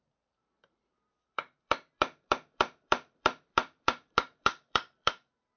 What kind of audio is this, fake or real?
fake